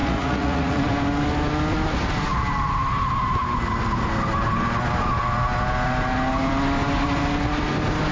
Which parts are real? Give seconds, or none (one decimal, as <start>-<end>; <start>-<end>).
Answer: 0.8-8.1